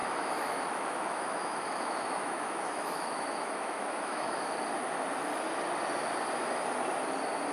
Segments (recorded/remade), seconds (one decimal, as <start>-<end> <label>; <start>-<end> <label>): 0.0-4.5 remade; 4.5-7.5 recorded